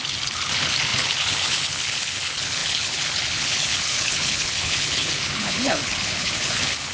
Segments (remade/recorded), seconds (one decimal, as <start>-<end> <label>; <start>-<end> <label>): 0.0-6.9 remade